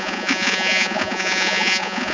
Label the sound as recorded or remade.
remade